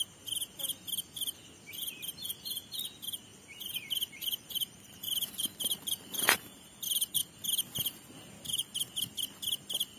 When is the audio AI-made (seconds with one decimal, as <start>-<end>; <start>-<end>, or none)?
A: 3.3-7.2

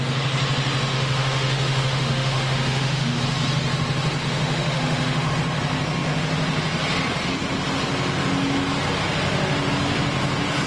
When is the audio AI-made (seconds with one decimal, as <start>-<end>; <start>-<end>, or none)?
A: 0.9-3.2; 4.2-5.3

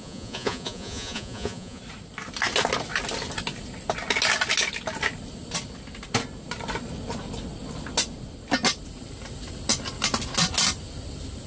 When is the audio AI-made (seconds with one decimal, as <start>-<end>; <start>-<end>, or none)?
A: 0.0-1.8

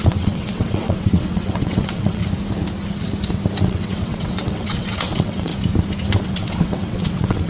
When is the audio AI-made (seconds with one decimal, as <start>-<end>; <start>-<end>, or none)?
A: 0.0-2.2; 3.6-5.5; 6.2-7.5

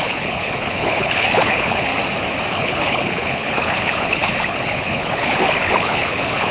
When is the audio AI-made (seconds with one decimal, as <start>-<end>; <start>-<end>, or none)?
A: 0.0-1.9; 2.5-6.5

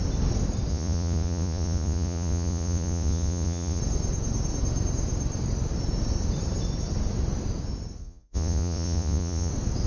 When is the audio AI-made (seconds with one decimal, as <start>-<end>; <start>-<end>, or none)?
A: 0.7-3.8; 8.0-9.5

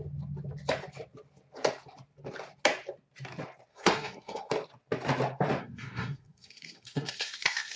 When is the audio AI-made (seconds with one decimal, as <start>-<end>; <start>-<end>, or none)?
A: 3.7-4.5; 5.6-7.8

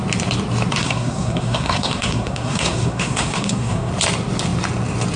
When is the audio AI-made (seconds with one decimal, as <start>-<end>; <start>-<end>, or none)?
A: 0.8-3.9